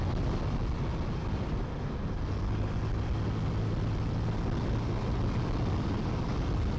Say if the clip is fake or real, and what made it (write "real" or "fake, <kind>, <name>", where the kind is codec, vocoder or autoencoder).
real